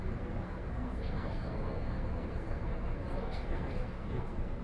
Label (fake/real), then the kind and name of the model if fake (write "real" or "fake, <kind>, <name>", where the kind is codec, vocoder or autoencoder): fake, codec, SNAC